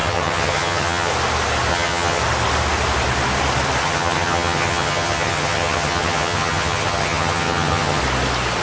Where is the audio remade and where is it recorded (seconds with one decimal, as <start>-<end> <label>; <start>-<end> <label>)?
0.0-1.1 remade; 1.1-1.7 recorded; 1.7-2.2 remade; 2.2-3.8 recorded; 3.8-8.0 remade; 8.0-8.6 recorded